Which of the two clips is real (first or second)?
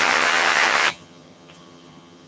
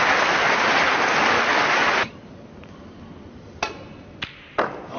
second